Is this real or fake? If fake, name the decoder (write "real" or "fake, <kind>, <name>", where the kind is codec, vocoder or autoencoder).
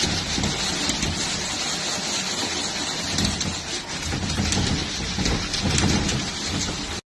real